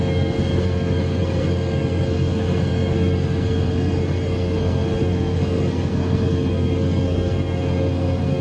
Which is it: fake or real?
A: fake